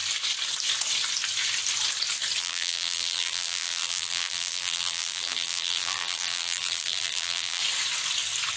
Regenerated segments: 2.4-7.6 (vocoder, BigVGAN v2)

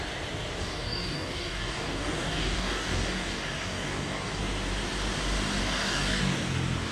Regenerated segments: 0.6-4.4 (codec, DAC); 5.6-6.2